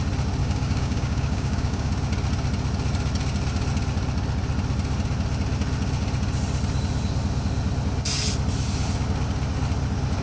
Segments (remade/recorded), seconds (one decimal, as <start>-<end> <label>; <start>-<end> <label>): 0.0-0.4 recorded; 0.4-1.9 remade; 1.9-10.2 recorded